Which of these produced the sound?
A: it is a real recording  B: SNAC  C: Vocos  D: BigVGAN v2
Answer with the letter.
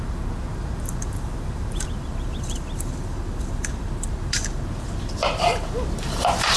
D